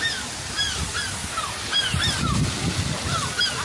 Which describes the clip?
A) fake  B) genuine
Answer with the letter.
B